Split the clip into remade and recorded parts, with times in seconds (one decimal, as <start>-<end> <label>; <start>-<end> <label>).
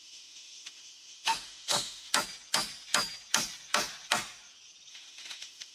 0.0-2.1 remade; 2.1-4.9 recorded; 4.9-5.7 remade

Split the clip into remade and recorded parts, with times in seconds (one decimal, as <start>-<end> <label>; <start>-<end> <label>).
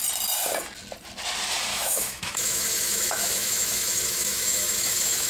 0.0-1.7 recorded; 1.7-5.3 remade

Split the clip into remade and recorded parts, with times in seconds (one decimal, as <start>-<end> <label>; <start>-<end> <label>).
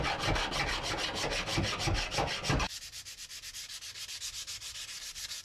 0.0-5.4 recorded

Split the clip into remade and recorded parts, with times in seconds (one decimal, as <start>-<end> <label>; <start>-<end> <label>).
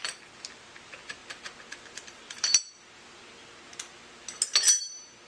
0.0-5.3 recorded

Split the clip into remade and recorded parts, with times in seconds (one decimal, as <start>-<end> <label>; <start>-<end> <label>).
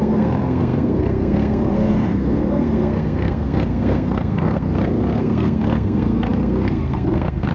0.0-7.5 remade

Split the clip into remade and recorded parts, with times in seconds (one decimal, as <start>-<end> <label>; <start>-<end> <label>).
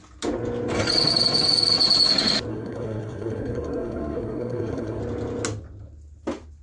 0.0-2.5 recorded; 2.5-5.0 remade; 5.0-6.6 recorded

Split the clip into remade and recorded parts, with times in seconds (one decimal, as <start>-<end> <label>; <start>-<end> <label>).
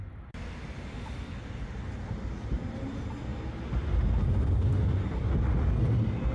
0.0-6.3 recorded